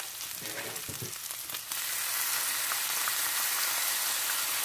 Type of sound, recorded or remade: recorded